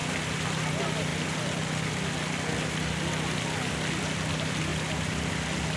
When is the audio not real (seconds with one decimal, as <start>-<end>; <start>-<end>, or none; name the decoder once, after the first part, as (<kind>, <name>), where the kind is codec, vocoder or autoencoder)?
none